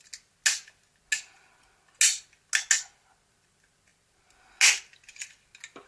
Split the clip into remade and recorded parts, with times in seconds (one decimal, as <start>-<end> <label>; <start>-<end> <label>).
0.0-5.9 recorded